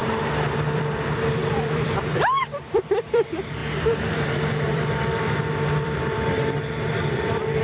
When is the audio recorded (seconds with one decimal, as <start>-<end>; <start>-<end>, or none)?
0.0-0.8